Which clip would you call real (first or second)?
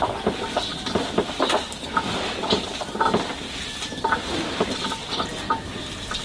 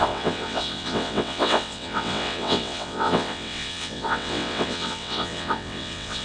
first